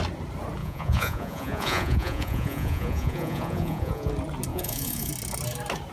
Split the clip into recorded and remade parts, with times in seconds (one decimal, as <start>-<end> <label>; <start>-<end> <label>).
0.0-0.6 recorded; 0.6-4.1 remade; 4.1-4.5 recorded; 4.5-5.1 remade; 5.1-5.9 recorded